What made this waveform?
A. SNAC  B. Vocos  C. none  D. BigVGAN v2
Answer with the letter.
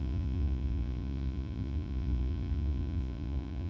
B